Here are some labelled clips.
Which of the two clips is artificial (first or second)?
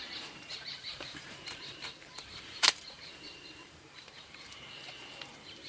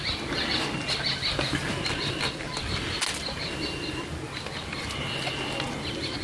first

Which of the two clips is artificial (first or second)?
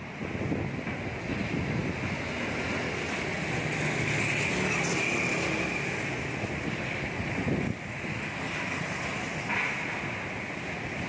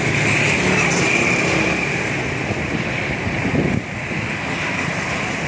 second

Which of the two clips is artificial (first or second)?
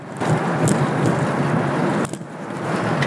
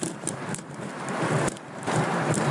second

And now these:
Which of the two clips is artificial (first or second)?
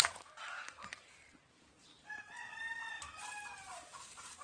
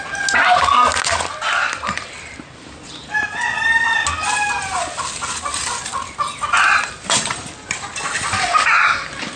first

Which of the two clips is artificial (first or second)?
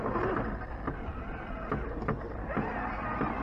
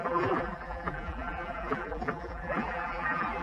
second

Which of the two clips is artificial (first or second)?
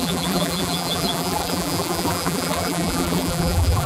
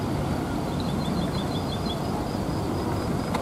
first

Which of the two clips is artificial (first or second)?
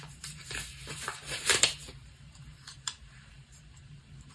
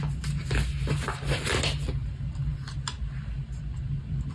first